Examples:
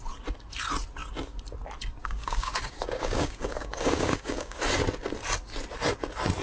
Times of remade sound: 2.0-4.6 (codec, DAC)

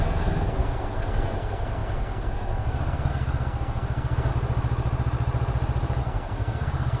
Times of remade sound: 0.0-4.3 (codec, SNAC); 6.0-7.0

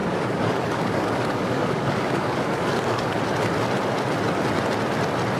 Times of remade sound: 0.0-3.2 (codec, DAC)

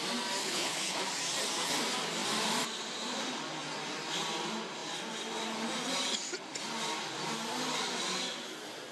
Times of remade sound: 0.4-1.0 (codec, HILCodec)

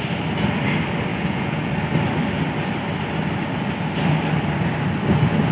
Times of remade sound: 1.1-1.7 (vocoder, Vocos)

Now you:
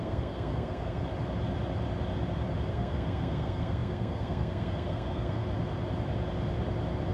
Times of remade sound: 0.0-1.0 (codec, SNAC); 2.7-5.4